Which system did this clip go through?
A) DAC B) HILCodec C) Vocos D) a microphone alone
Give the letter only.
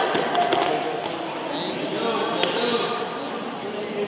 D